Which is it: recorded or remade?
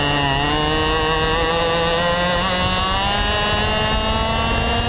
recorded